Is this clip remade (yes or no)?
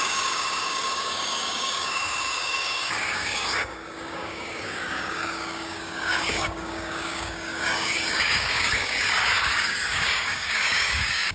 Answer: yes